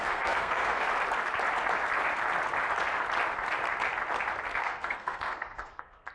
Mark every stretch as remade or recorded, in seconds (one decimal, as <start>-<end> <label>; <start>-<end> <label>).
0.0-0.9 remade; 0.9-4.6 recorded; 4.6-6.1 remade